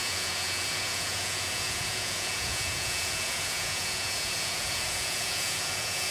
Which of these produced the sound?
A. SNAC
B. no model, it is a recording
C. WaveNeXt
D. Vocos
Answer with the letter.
D